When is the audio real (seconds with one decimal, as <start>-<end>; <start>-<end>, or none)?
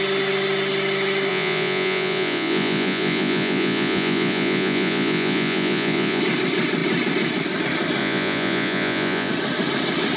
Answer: 0.0-1.3; 6.2-8.0; 9.3-10.2